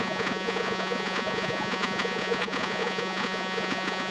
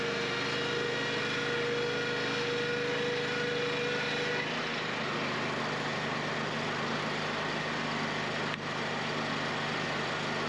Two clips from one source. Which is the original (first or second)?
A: second